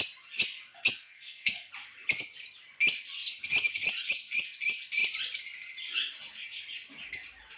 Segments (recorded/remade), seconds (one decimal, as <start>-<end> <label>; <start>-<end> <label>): 0.0-1.0 recorded; 1.0-1.7 remade; 1.7-7.6 recorded